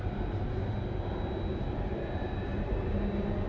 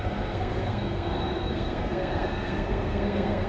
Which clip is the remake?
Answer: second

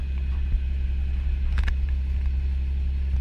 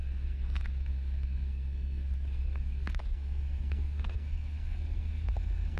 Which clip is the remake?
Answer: second